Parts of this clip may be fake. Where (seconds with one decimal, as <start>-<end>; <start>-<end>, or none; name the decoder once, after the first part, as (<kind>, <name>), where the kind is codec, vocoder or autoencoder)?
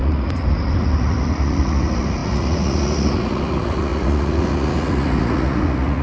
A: 0.0-6.0 (vocoder, Vocos)